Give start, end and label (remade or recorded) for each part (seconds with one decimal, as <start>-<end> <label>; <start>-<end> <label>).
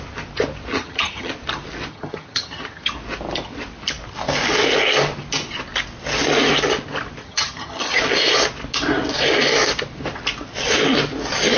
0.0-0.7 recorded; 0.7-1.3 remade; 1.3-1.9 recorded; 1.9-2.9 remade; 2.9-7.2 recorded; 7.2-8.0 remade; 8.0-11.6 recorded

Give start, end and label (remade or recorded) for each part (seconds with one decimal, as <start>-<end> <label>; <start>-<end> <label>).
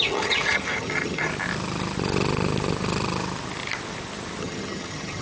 0.0-1.3 remade; 1.3-4.4 recorded; 4.4-5.2 remade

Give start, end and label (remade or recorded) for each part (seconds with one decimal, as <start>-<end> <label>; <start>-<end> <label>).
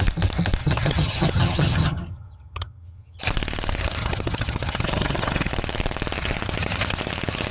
0.0-0.6 recorded; 0.6-3.2 remade; 3.2-4.0 recorded; 4.0-5.5 remade; 5.5-7.5 recorded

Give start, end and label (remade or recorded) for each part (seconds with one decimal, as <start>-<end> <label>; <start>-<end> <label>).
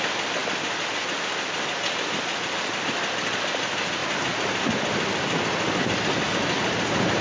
0.0-7.2 recorded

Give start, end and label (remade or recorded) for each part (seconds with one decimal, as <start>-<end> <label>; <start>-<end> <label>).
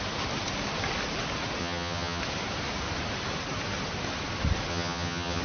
0.0-1.6 recorded; 1.6-2.2 remade; 2.2-4.7 recorded; 4.7-5.4 remade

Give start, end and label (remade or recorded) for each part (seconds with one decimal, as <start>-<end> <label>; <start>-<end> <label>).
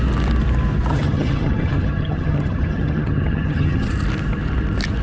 0.0-0.9 recorded; 0.9-3.9 remade; 3.9-5.0 recorded